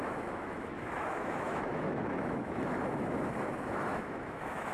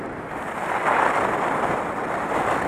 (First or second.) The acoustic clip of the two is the second